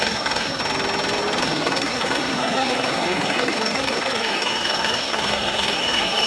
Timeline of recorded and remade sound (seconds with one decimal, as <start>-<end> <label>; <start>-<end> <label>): 0.0-0.6 remade; 0.6-1.4 recorded; 1.4-6.3 remade